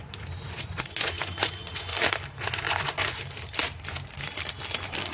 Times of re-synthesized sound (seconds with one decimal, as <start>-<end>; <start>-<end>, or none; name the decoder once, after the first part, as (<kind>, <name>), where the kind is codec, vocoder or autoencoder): 0.0-1.9 (vocoder, Vocos); 2.4-3.2